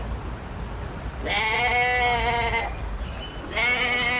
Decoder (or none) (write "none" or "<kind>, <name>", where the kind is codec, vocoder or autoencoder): none